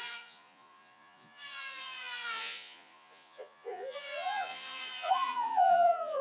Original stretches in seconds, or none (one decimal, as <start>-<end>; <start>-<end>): none